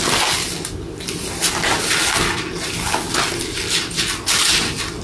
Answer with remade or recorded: recorded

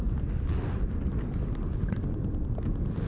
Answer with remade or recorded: recorded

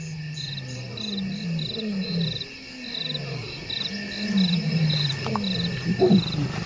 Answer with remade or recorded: recorded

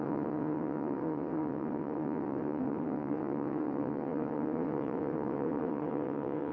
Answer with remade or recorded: remade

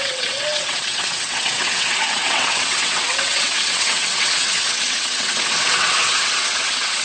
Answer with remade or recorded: remade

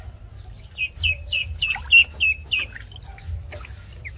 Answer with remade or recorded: recorded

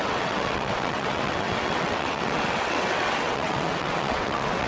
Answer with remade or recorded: remade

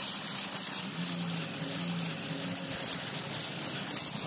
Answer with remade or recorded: recorded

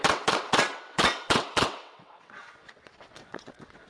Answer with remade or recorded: remade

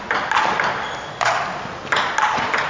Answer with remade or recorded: recorded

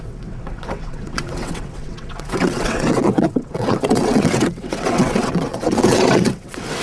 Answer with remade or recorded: remade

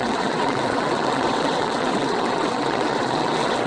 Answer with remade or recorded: remade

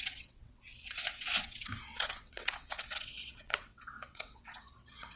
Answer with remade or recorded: remade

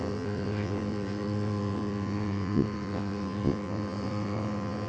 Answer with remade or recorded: remade